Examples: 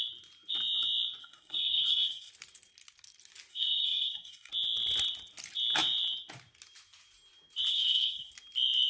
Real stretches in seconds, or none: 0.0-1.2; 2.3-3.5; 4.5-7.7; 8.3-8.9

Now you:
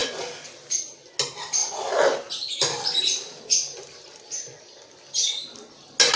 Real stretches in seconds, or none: 1.1-1.6; 5.3-6.2

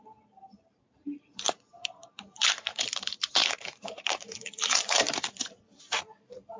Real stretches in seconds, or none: none

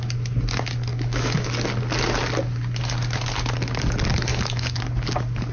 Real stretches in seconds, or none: 0.0-0.9; 1.5-4.3; 4.8-5.5

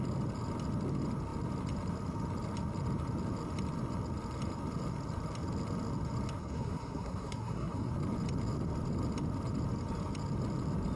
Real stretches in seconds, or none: 0.0-6.4; 7.9-11.0

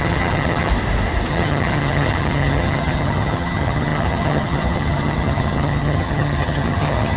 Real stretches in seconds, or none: 0.7-1.3

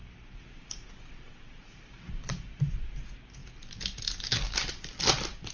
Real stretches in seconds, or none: 2.9-3.4; 4.0-5.5

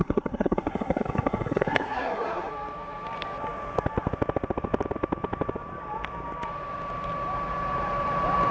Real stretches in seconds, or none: 2.5-8.5